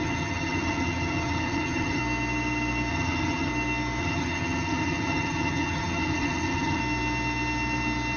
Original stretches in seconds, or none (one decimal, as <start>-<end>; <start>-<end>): 2.0-2.9; 3.5-4.0; 6.8-8.2